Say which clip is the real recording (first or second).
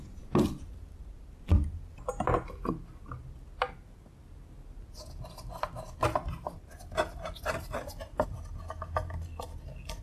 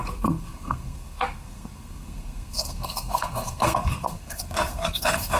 first